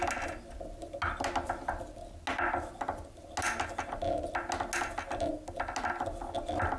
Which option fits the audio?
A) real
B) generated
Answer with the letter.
A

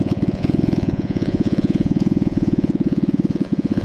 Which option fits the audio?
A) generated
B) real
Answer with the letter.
A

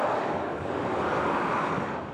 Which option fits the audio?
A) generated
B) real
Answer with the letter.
A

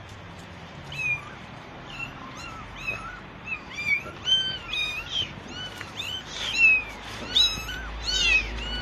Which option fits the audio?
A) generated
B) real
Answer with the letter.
A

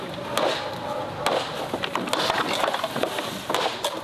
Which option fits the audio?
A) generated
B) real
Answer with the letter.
B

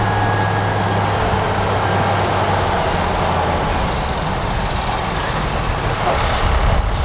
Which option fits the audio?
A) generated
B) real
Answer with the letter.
B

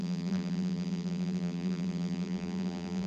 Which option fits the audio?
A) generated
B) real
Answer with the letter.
A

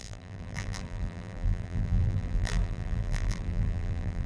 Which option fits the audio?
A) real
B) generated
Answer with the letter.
B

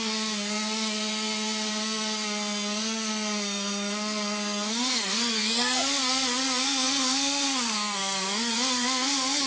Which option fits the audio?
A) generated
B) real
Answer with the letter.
A